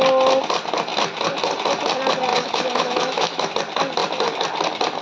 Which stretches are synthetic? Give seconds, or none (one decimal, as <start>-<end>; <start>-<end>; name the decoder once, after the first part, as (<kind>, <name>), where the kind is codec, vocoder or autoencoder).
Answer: 2.3-3.5 (autoencoder, DAC-VAE)

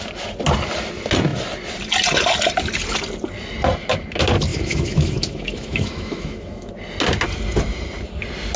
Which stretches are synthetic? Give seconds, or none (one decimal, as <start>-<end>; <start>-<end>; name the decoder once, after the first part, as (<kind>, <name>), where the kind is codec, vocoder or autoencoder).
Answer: 4.5-6.7 (autoencoder, DAC-VAE)